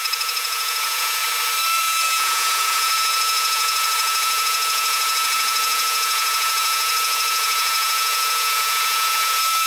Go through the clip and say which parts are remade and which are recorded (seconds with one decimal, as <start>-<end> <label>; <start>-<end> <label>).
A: 0.0-1.2 remade; 1.2-1.8 recorded; 1.8-9.7 remade